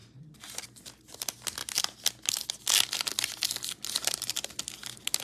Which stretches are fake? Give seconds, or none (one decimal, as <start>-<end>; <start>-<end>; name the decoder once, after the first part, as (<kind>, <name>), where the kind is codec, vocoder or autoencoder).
0.0-0.6 (vocoder, BigVGAN v2)